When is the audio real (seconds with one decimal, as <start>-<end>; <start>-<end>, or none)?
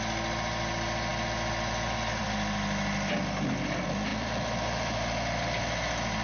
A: 0.0-4.1; 5.6-6.2